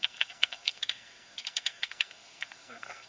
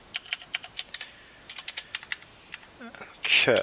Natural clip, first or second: second